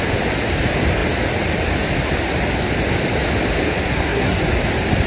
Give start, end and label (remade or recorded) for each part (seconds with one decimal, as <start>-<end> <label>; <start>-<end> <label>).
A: 0.0-3.8 recorded; 3.8-4.4 remade; 4.4-5.1 recorded